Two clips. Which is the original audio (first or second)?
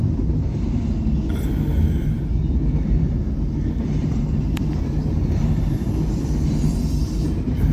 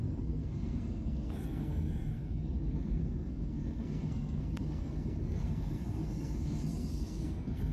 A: first